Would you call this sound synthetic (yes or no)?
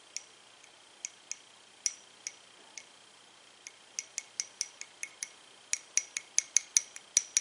no